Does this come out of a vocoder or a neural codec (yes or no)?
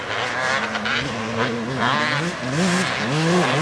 no